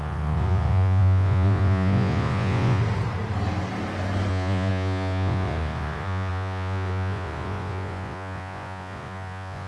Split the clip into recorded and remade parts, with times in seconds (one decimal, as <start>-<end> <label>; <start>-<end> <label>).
0.0-2.8 remade; 2.8-4.3 recorded; 4.3-9.7 remade

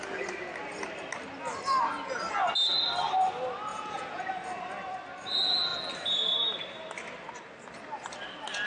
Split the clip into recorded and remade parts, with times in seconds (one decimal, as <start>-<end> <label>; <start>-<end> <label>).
0.0-3.7 recorded; 3.7-4.2 remade; 4.2-8.7 recorded

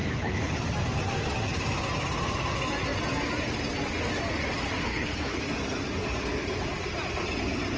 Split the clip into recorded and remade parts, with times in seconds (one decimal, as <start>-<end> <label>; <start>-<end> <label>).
0.0-0.6 remade; 0.6-4.9 recorded; 4.9-5.4 remade; 5.4-7.8 recorded